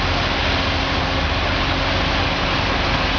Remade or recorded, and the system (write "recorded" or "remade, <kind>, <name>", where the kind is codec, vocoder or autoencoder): recorded